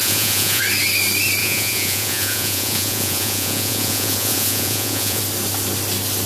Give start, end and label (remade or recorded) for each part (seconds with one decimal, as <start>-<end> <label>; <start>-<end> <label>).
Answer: 0.0-0.6 remade; 0.6-1.4 recorded; 1.4-5.2 remade; 5.2-6.3 recorded